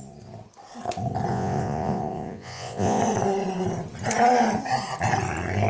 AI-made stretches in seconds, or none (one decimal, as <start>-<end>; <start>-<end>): 1.3-3.0